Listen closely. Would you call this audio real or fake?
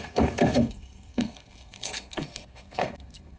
fake